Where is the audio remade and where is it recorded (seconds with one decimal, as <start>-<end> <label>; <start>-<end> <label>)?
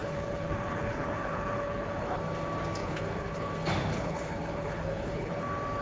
0.0-2.2 remade; 2.2-2.8 recorded; 2.8-3.5 remade; 3.5-3.9 recorded; 3.9-5.3 remade; 5.3-5.8 recorded